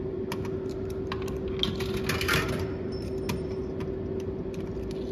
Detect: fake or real real